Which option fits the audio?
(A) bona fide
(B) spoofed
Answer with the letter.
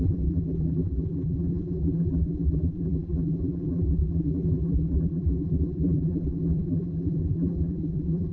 B